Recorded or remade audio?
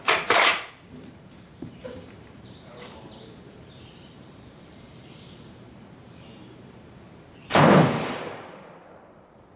remade